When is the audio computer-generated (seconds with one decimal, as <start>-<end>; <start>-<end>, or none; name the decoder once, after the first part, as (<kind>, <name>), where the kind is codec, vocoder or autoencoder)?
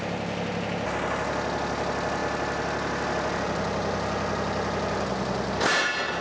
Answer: none